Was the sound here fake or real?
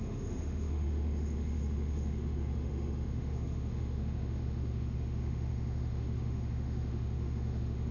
fake